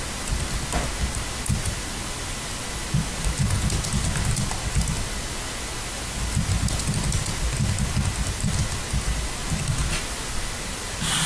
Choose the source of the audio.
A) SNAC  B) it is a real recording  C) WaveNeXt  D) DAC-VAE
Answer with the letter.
B